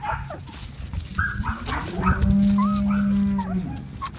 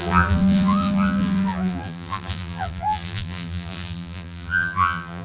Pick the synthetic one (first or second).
second